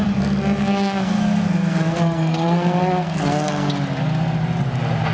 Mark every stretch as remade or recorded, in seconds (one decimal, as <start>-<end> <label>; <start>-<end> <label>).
0.0-0.6 recorded; 0.6-3.7 remade; 3.7-5.1 recorded